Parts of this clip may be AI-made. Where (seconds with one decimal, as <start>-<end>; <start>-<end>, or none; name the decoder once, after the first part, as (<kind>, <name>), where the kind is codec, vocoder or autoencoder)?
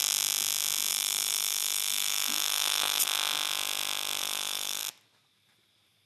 0.9-3.0 (autoencoder, DAC-VAE); 4.2-4.8